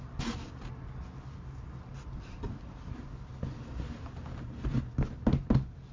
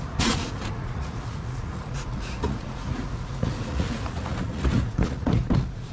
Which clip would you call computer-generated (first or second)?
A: second